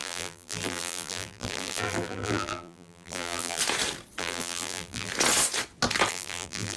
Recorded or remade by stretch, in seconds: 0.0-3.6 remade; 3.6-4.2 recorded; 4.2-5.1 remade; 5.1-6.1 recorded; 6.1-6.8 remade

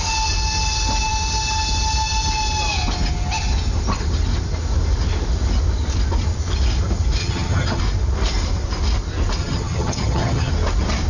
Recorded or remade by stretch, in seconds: 0.0-7.2 recorded; 7.2-7.8 remade; 7.8-9.4 recorded; 9.4-10.5 remade; 10.5-11.1 recorded